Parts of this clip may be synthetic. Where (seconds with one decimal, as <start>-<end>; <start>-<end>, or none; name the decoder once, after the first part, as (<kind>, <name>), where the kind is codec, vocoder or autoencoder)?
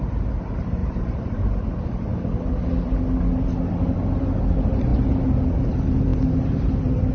0.8-1.5 (vocoder, BigVGAN v2)